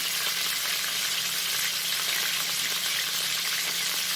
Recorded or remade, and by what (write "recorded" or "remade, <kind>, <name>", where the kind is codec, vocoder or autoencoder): recorded